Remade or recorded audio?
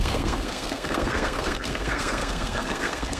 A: remade